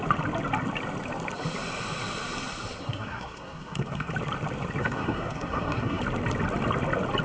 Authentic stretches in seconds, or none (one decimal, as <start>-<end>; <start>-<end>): 0.0-2.8; 4.1-4.8; 6.0-7.2